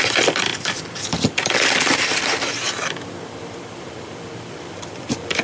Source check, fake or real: fake